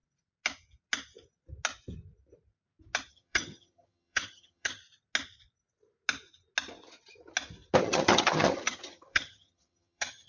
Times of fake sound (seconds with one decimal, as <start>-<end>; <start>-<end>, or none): 3.1-4.8; 7.8-10.3